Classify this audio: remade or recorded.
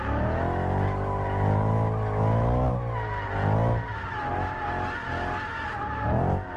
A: recorded